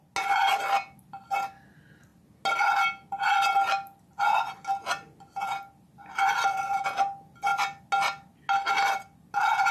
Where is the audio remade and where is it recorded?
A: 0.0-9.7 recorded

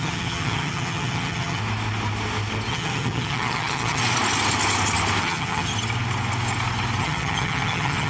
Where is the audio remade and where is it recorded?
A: 0.0-1.6 remade; 1.6-2.7 recorded; 2.7-4.0 remade; 4.0-5.2 recorded; 5.2-5.7 remade; 5.7-7.0 recorded; 7.0-8.1 remade